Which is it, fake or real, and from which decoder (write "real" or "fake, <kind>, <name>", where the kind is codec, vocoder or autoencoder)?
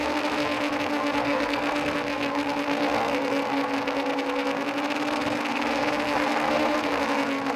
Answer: fake, codec, SNAC